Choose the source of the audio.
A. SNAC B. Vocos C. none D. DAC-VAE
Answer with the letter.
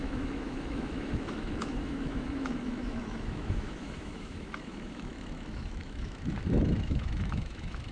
D